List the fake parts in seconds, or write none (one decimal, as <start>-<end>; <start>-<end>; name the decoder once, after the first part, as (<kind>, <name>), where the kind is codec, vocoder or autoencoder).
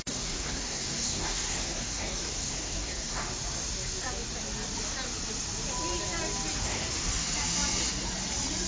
0.0-3.2 (codec, SNAC); 6.6-7.1